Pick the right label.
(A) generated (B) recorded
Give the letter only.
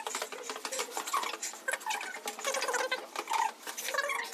B